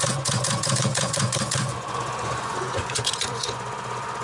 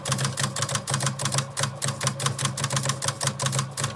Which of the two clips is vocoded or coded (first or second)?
first